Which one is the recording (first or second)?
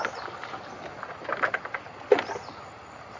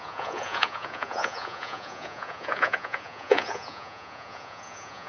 first